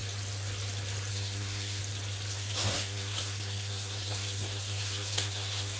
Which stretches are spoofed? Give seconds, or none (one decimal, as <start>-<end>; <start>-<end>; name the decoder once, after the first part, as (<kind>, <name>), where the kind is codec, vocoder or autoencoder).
1.1-1.8 (codec, SNAC); 2.3-5.8